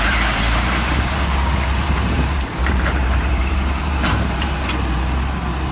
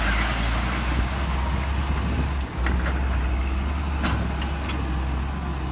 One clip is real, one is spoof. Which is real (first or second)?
second